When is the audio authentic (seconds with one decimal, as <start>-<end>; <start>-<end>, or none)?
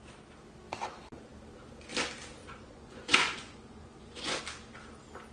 0.0-2.4; 4.4-5.3